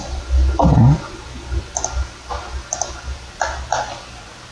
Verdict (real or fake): real